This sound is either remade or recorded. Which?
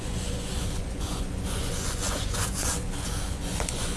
remade